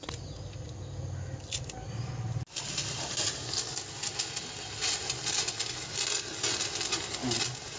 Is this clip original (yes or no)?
yes